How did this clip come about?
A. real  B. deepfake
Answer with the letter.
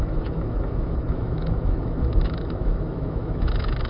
B